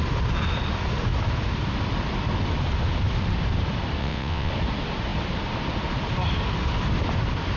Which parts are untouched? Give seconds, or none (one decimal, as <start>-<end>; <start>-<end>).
0.0-4.0; 4.5-7.6